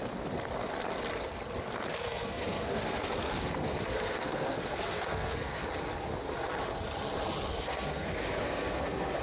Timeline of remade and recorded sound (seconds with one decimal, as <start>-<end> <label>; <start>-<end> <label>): 0.0-1.9 recorded; 1.9-5.6 remade; 5.6-7.5 recorded; 7.5-9.2 remade